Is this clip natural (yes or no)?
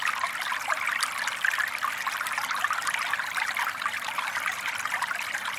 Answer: yes